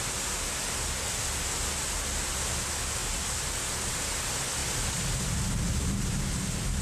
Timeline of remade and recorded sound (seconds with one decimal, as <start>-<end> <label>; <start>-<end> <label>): 0.0-6.8 recorded